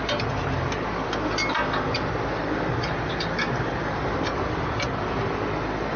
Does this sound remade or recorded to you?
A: recorded